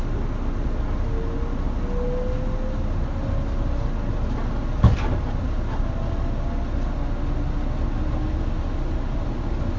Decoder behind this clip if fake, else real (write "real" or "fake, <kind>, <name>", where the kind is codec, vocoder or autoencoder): real